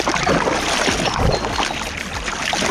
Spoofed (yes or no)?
no